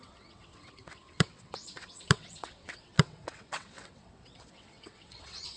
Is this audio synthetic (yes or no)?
yes